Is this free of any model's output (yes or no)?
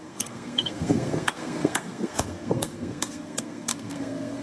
no